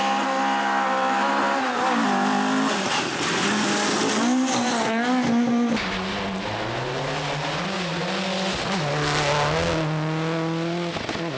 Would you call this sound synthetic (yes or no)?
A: no